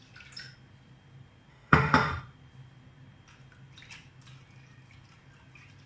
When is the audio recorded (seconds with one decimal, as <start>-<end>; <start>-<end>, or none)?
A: 0.0-1.5; 2.1-5.9